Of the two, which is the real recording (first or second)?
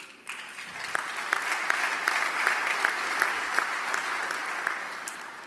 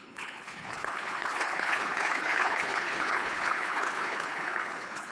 first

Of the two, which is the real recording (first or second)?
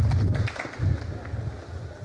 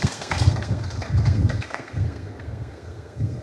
first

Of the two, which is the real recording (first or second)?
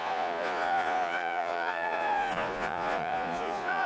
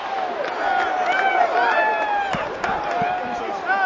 second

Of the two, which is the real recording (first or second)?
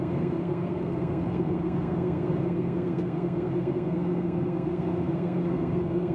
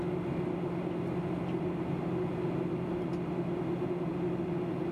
second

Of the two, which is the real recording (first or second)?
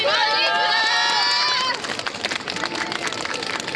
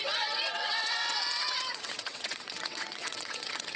first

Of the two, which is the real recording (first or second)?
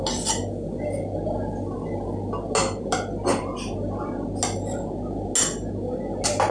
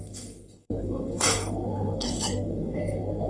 first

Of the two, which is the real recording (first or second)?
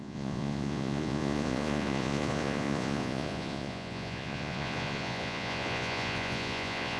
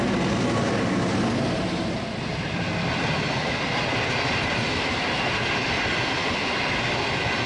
second